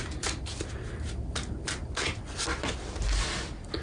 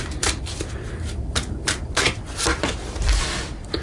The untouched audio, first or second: first